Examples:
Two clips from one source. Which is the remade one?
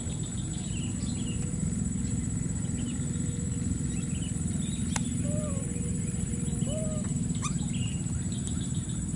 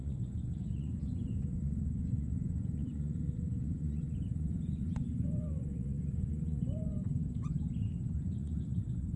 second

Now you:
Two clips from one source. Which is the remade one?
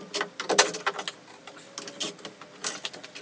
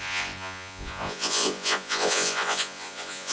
second